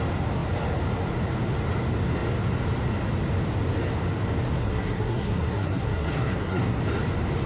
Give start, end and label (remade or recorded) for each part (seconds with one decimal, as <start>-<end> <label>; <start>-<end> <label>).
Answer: 0.0-4.6 recorded; 4.6-6.8 remade; 6.8-7.5 recorded